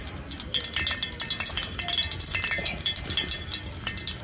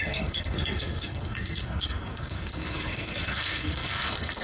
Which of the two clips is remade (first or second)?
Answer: second